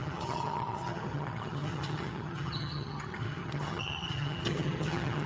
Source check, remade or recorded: remade